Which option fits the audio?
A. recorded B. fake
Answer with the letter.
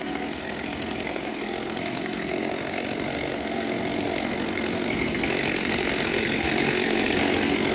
B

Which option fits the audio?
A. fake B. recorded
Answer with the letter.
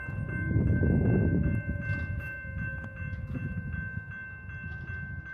B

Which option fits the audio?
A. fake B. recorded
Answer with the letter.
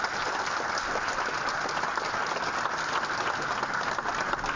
B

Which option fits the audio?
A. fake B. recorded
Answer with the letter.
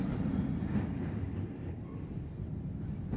B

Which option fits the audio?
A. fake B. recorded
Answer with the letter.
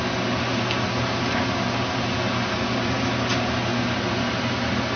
B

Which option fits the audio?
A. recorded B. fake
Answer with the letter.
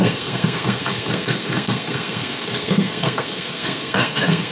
B